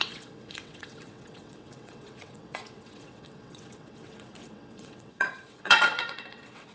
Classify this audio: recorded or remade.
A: remade